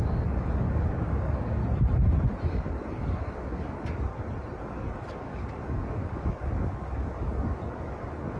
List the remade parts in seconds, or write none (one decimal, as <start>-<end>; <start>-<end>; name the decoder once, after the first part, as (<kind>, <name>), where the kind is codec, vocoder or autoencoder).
0.0-1.6 (codec, DAC); 2.5-4.1; 4.6-8.4